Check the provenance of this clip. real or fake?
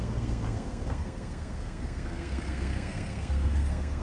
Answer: fake